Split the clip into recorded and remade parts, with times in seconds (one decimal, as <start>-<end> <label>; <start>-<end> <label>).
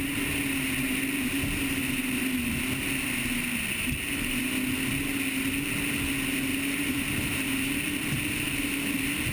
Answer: 0.0-6.5 recorded; 6.5-7.5 remade; 7.5-9.3 recorded